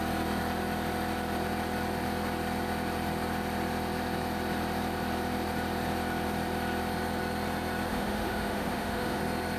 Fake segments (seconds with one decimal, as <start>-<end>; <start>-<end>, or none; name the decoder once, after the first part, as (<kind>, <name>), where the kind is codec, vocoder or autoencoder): 7.9-9.2 (autoencoder, DAC-VAE)